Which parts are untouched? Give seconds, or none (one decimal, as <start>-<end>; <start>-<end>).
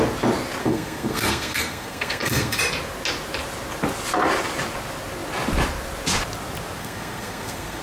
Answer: 0.0-0.6; 2.6-6.8